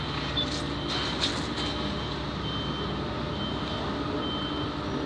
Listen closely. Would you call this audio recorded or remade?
recorded